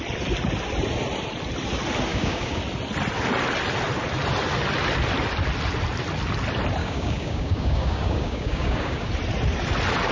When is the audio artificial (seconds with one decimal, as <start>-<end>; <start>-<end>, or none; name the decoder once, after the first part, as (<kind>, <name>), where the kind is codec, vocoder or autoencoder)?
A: 2.1-2.6 (codec, DAC); 6.8-9.1